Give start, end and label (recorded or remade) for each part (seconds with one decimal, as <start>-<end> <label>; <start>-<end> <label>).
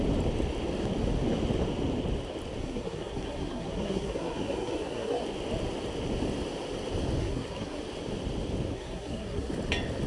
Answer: 0.0-2.6 recorded; 2.6-5.2 remade; 5.2-7.2 recorded; 7.2-7.8 remade; 7.8-8.7 recorded; 8.7-9.5 remade; 9.5-10.1 recorded